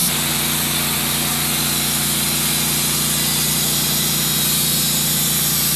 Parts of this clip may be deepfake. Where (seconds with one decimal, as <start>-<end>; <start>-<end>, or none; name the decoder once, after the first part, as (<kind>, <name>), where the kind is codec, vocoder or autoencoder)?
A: none